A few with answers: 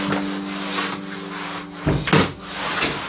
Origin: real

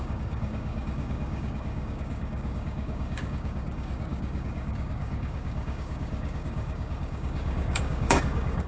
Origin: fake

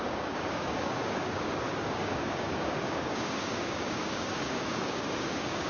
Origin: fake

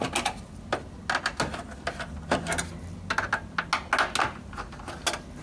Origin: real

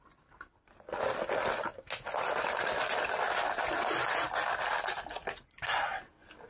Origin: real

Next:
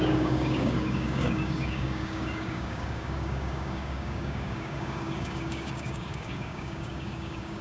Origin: fake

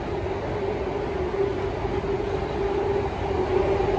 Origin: real